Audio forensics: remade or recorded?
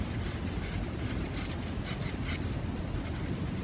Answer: recorded